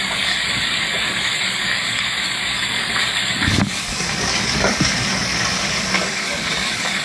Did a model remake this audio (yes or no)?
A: yes